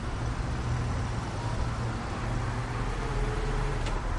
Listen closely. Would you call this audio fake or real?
real